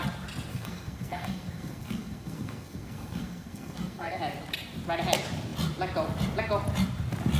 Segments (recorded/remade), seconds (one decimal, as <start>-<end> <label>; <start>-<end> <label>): 0.0-0.5 recorded; 0.5-4.2 remade; 4.2-7.4 recorded

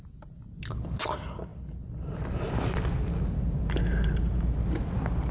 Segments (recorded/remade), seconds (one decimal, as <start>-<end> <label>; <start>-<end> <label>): 0.0-5.3 recorded

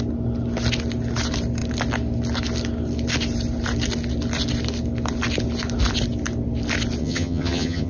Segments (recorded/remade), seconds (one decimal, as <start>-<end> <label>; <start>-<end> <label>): 0.0-7.0 recorded; 7.0-7.9 remade

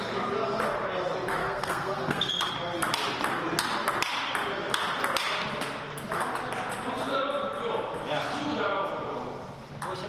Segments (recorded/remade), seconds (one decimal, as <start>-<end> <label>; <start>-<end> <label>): 0.0-1.4 recorded; 1.4-2.3 remade; 2.3-10.1 recorded

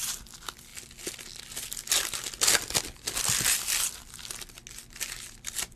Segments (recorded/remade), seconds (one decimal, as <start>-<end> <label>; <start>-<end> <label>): 0.0-5.8 recorded